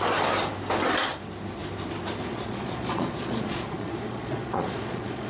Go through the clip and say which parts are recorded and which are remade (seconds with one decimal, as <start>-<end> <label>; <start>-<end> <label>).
0.0-2.3 recorded; 2.3-5.3 remade